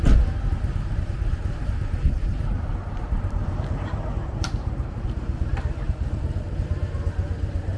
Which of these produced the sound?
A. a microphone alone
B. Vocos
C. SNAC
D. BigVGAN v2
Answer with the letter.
D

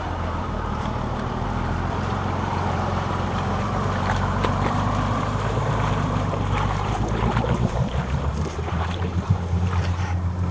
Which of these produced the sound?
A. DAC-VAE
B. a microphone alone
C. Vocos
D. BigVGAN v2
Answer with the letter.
D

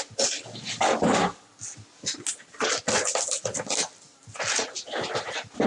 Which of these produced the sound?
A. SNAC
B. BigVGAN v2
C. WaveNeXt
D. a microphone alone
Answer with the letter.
D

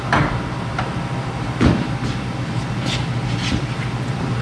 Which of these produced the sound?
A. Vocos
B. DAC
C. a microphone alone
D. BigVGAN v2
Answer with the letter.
C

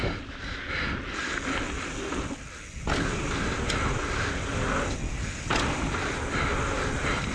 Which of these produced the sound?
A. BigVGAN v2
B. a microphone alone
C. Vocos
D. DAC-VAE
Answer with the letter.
B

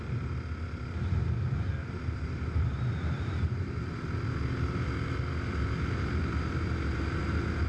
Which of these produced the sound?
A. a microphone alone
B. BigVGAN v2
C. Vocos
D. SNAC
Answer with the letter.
A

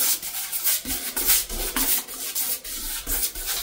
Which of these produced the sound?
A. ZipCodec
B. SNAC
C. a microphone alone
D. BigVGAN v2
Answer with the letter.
C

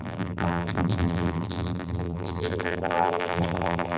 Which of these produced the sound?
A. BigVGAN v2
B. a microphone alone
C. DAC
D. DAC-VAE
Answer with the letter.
A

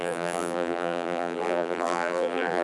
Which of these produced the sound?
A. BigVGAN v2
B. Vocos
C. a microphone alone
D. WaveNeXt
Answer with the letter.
A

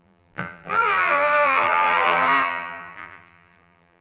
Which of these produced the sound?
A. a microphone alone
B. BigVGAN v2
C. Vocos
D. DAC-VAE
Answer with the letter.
B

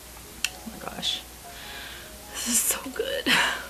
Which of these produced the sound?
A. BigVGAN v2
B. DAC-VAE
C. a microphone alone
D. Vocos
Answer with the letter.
C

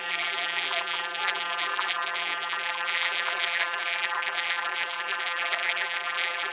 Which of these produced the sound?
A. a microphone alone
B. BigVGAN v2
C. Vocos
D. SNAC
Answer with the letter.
B